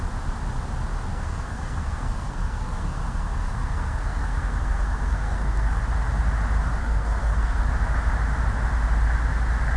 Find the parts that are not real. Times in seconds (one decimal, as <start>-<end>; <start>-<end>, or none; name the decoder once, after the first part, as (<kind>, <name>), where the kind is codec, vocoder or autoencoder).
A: 1.1-5.8 (codec, SNAC); 6.8-7.7